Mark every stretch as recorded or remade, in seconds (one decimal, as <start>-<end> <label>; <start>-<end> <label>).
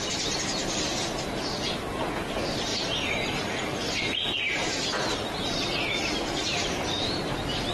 0.0-2.7 recorded; 2.7-7.3 remade; 7.3-7.7 recorded